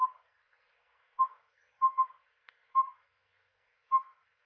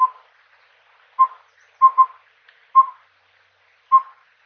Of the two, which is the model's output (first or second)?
first